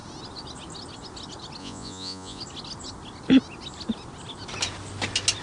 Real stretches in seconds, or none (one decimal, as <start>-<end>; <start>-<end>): 0.0-1.6; 2.4-5.4